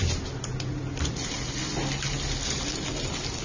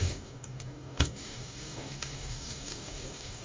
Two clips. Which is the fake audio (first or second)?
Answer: second